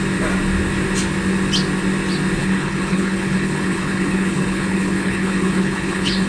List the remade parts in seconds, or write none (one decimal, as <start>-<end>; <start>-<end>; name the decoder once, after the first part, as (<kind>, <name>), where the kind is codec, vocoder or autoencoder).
2.4-6.3 (codec, HILCodec)